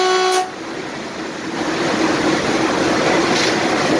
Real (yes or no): yes